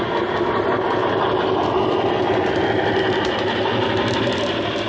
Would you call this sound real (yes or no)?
yes